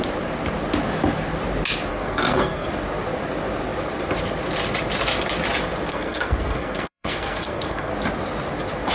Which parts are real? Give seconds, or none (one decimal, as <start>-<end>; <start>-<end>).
0.0-1.9; 2.7-5.9; 7.9-8.9